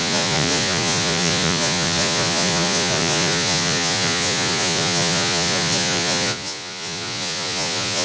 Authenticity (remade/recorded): remade